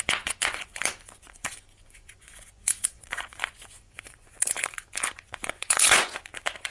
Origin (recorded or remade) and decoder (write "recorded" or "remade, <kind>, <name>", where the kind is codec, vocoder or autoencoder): remade, vocoder, Vocos